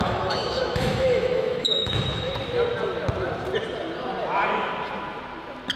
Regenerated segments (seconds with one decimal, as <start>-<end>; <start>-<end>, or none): 0.0-2.3